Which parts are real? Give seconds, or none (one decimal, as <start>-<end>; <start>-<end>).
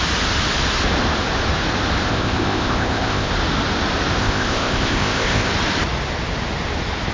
0.0-2.1; 3.3-4.2; 5.5-7.1